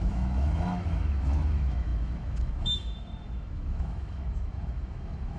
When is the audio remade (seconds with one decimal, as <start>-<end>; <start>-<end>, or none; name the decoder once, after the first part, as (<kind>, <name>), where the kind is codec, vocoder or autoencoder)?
0.0-5.4 (autoencoder, DAC-VAE)